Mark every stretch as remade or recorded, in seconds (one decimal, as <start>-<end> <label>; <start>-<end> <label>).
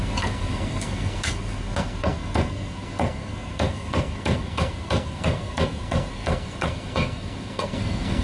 0.0-8.2 remade